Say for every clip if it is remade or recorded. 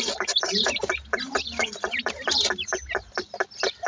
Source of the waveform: remade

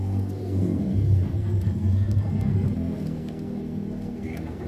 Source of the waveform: remade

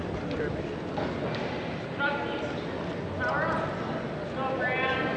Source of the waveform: recorded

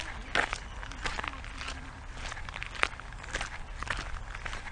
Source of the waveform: recorded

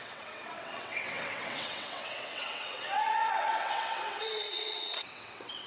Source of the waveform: remade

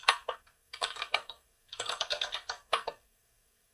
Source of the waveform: remade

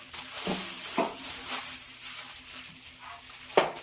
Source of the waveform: recorded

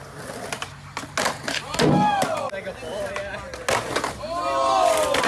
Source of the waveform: recorded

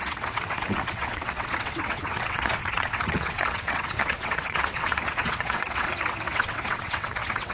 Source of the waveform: remade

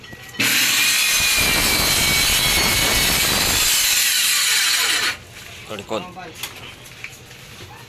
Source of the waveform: recorded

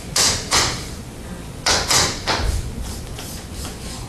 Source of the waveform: remade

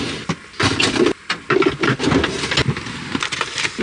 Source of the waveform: recorded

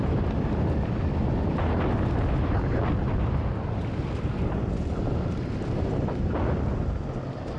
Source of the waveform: recorded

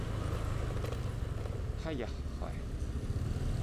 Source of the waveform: recorded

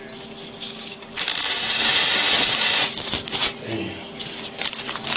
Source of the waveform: recorded